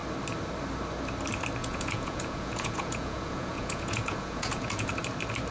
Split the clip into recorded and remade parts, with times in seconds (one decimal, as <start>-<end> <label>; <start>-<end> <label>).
0.0-1.6 recorded; 1.6-4.9 remade; 4.9-5.5 recorded